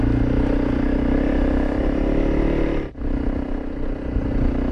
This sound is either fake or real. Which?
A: real